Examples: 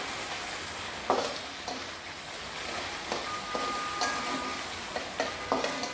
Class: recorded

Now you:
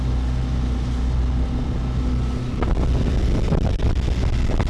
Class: recorded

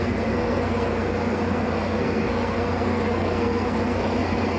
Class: remade